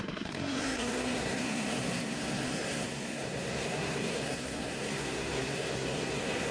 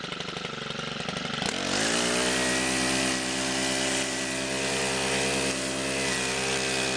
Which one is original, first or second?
second